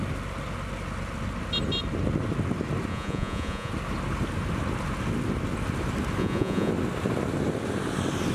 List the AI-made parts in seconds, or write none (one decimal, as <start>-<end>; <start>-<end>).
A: 2.9-3.7; 6.2-6.7

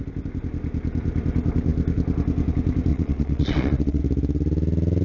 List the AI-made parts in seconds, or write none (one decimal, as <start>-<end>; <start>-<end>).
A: 2.9-4.0

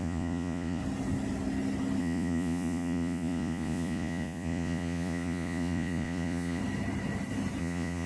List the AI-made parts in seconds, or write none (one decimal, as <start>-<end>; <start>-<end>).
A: 0.0-0.8; 2.0-6.6; 7.6-8.1